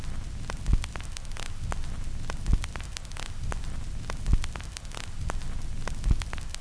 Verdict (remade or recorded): recorded